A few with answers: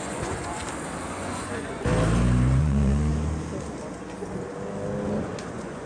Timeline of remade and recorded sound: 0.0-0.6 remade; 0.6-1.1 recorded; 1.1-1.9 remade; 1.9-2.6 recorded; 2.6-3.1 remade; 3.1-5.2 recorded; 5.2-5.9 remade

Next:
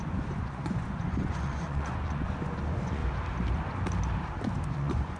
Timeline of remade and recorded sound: 0.0-3.0 remade; 3.0-4.6 recorded; 4.6-5.2 remade